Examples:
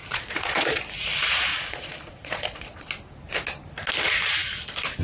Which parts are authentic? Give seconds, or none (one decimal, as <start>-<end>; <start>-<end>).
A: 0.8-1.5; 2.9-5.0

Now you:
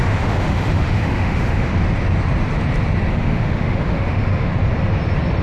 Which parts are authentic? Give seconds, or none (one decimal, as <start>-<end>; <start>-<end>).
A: 1.7-3.1; 4.5-5.4

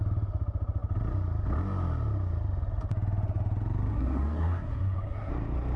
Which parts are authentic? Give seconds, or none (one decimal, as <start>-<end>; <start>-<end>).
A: 0.0-3.9; 5.3-5.8

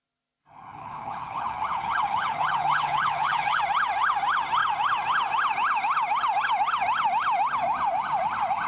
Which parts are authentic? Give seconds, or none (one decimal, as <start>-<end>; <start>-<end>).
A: 0.0-0.4; 3.6-8.7

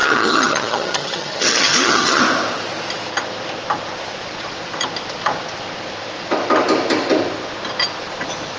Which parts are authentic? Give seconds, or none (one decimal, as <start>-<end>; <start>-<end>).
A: 2.2-8.6